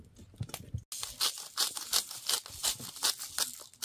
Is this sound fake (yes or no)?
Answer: no